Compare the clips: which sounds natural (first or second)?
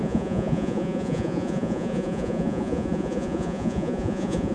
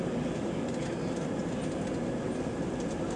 second